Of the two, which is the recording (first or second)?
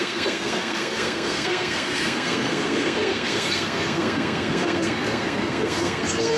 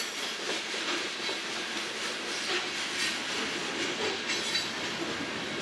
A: second